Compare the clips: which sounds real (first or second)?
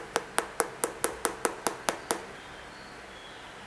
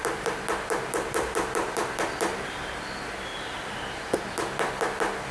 first